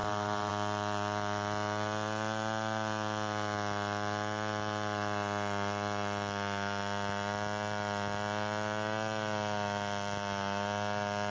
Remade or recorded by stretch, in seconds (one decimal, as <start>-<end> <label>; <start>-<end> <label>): 0.0-0.5 remade; 0.5-11.3 recorded